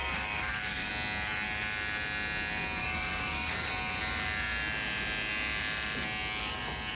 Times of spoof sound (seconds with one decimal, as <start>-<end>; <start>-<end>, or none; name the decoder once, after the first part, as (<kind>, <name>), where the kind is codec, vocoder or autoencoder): 0.0-0.9 (codec, DAC); 2.8-3.7